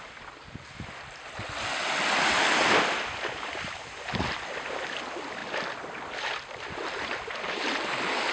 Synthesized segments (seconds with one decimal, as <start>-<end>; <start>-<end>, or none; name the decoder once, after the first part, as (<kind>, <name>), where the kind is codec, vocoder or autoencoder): none